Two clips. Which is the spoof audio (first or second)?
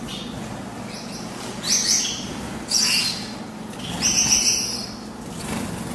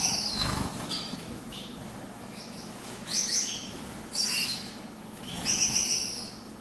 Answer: second